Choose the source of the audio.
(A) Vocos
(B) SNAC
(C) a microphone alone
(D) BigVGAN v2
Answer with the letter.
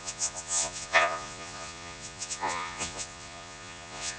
A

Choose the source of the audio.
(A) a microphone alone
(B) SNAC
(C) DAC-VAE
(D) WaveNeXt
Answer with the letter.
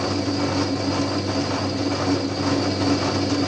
A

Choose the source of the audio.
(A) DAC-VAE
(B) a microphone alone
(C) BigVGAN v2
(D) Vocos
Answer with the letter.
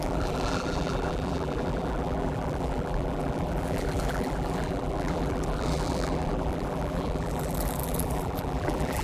C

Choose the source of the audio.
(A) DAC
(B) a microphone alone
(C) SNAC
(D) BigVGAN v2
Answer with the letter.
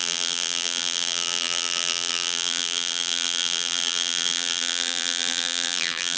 D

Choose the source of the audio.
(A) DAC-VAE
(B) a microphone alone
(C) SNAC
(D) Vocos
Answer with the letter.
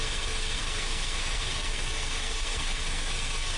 C